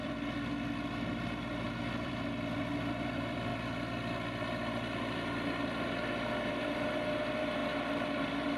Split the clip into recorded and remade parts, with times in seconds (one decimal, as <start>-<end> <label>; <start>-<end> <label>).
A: 0.0-3.5 remade; 3.5-5.9 recorded; 5.9-7.6 remade; 7.6-8.2 recorded; 8.2-8.6 remade